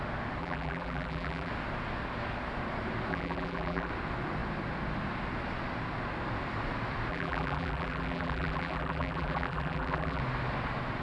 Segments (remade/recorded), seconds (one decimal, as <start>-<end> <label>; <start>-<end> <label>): 0.0-0.4 recorded; 0.4-1.5 remade; 1.5-3.1 recorded; 3.1-3.9 remade; 3.9-7.1 recorded; 7.1-10.2 remade; 10.2-11.0 recorded